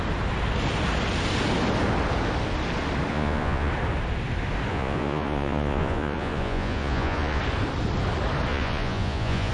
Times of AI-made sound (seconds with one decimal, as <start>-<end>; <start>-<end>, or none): 3.1-3.7; 4.7-7.4; 8.5-9.5